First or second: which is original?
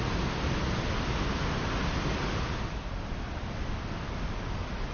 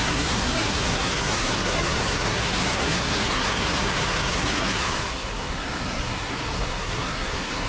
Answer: first